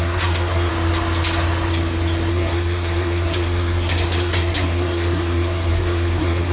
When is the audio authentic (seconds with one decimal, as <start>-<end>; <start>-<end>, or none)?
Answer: 0.7-2.3